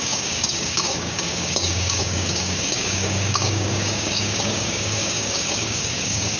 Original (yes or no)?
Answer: no